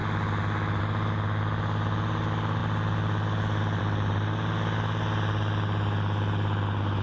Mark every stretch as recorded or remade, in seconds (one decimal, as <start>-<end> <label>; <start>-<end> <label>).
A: 0.0-7.0 recorded